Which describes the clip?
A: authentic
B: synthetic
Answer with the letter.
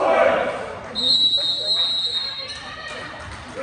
A